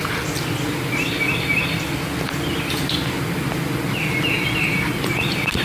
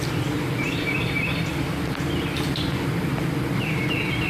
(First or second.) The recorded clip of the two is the first